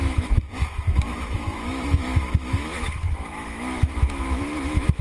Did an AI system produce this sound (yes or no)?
yes